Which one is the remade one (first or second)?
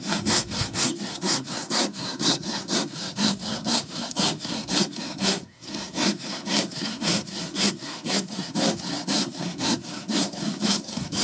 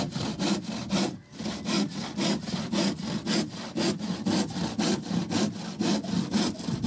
first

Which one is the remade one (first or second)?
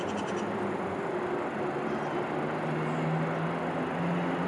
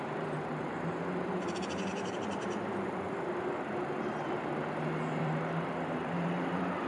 second